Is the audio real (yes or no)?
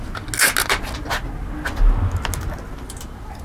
yes